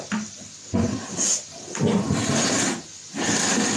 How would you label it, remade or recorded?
recorded